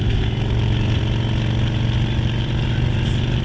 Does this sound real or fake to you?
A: real